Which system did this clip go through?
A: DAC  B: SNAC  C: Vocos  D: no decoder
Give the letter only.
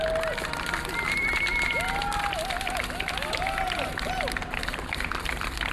D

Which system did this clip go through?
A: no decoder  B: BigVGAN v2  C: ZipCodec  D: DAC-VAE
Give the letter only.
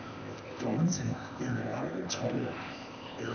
C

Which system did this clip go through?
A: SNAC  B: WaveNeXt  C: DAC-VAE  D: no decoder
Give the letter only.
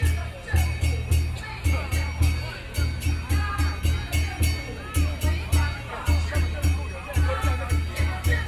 D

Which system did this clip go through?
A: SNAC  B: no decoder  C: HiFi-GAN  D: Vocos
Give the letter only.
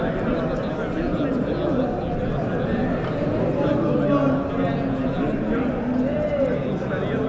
B